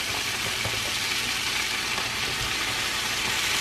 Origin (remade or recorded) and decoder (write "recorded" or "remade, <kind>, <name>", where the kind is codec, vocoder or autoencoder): recorded